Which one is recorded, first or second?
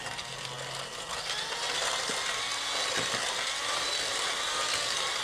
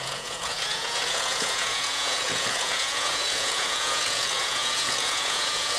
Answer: first